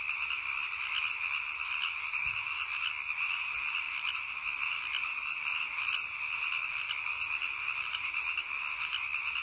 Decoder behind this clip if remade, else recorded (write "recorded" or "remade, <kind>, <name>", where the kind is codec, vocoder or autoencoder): recorded